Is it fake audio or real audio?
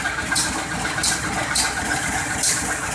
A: real